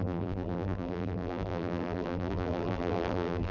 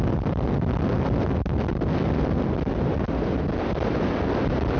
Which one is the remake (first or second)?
first